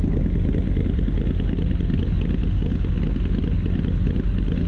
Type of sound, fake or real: real